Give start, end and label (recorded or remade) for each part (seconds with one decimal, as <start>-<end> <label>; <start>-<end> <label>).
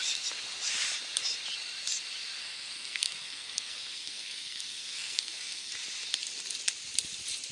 0.0-2.4 recorded; 2.4-5.7 remade; 5.7-7.5 recorded